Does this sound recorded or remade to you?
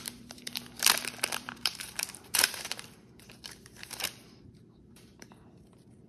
remade